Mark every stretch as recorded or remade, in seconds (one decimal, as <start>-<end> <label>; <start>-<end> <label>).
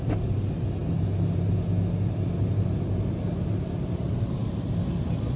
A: 0.0-5.4 recorded